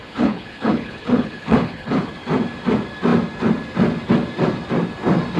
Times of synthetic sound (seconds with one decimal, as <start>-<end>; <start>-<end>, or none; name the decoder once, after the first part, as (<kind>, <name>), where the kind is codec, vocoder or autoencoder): 0.0-2.1 (codec, HILCodec)